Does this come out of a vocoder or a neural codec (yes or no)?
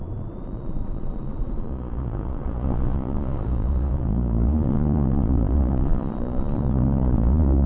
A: yes